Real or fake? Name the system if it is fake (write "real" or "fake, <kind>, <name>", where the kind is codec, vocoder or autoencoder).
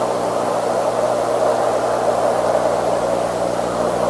real